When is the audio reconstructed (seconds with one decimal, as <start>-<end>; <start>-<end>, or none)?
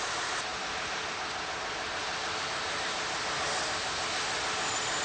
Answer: none